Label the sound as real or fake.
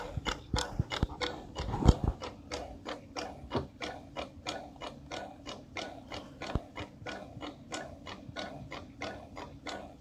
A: real